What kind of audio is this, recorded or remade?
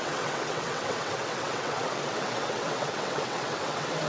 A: remade